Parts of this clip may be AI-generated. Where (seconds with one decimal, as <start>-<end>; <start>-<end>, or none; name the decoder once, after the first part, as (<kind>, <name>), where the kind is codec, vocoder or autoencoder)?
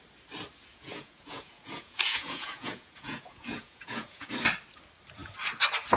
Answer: 0.7-4.3 (vocoder, Vocos)